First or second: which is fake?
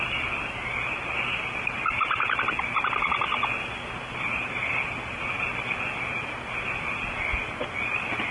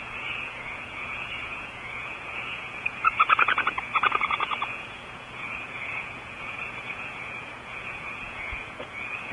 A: second